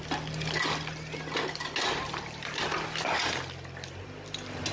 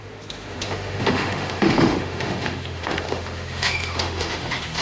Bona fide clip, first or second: first